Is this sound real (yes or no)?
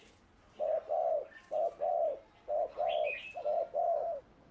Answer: yes